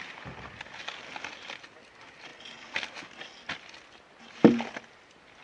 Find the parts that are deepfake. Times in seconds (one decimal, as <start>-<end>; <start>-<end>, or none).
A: none

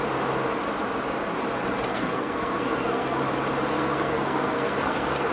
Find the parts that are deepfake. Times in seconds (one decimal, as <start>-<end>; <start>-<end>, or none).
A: 1.9-3.2; 3.7-5.3

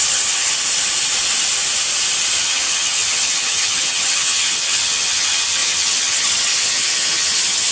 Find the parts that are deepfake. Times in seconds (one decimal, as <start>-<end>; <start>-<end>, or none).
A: 0.0-0.5; 2.4-7.7

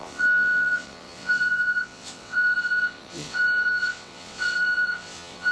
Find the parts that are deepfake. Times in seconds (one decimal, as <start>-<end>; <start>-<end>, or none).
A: 0.0-5.5

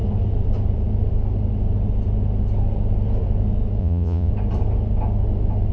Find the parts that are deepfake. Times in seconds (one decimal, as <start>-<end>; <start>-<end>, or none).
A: 3.8-4.3

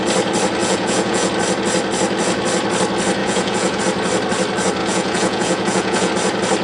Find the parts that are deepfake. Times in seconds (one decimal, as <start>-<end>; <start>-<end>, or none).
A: 0.6-1.3; 3.2-3.8; 4.8-6.1